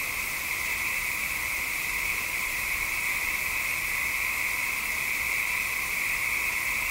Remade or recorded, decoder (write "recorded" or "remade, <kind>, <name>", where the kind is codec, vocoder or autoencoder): recorded